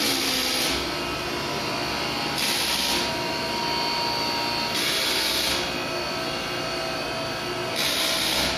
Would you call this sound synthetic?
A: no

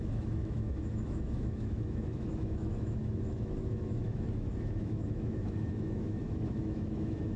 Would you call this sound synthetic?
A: yes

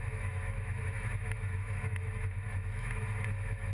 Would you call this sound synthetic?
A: yes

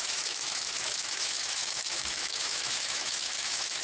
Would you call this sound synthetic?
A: yes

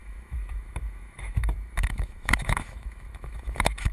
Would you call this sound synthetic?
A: yes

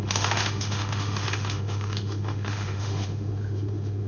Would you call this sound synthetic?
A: yes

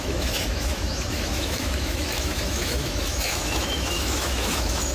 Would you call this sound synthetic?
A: yes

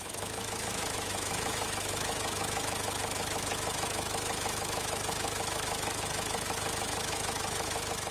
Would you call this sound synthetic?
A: yes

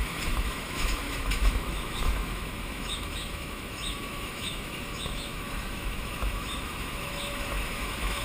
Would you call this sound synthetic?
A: yes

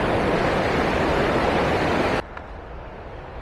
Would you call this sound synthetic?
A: no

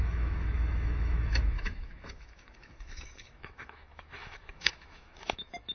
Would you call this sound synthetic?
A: yes